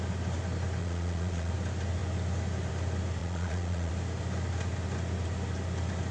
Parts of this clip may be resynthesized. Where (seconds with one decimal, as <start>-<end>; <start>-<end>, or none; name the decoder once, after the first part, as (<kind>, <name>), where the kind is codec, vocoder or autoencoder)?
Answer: 0.8-1.5 (vocoder, Vocos); 3.2-3.9